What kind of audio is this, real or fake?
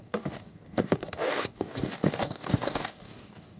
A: fake